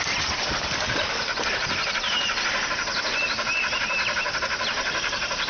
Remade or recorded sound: remade